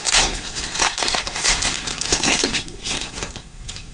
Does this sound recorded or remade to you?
remade